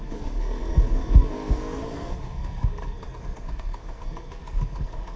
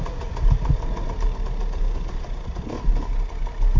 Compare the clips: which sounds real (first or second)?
second